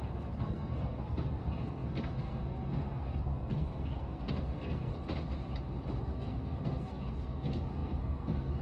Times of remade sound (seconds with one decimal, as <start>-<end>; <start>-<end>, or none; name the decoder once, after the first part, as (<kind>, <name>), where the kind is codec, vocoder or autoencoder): 0.0-4.9 (codec, SNAC); 6.0-8.6

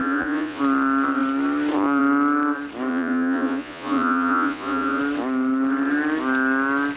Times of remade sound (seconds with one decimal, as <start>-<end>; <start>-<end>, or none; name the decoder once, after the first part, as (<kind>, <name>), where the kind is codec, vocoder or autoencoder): 0.0-0.6 (vocoder, Vocos); 2.9-5.0

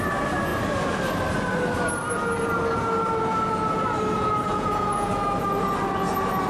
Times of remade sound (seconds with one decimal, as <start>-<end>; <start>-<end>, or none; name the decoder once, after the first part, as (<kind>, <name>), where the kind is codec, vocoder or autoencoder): 4.5-5.1 (vocoder, Vocos)

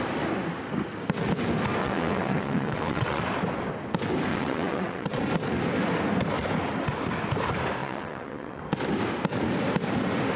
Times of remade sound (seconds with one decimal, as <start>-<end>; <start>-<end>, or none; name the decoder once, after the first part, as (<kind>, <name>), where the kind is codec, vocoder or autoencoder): 1.8-3.2 (vocoder, WaveNeXt); 4.3-5.2; 7.8-8.6